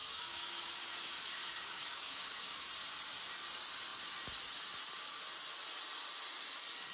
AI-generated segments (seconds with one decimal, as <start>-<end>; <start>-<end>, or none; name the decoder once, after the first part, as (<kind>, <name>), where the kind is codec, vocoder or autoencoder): 0.0-2.7 (codec, DAC)